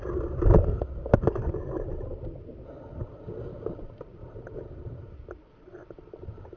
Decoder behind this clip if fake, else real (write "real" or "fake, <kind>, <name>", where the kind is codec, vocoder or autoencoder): real